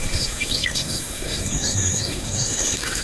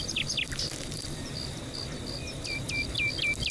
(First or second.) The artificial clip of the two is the first